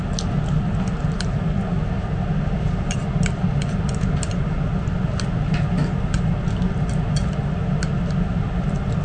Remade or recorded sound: recorded